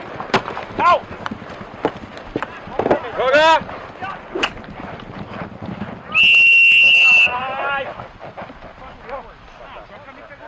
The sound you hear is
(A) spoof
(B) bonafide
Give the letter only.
B